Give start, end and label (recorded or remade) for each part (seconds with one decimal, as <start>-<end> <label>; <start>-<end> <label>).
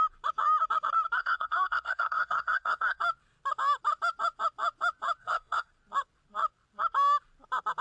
0.0-1.2 recorded; 1.2-3.0 remade; 3.0-5.2 recorded; 5.2-5.7 remade; 5.7-7.8 recorded